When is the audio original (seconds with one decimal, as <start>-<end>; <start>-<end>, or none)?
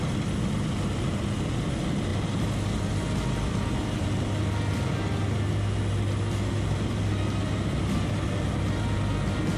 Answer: 0.0-9.6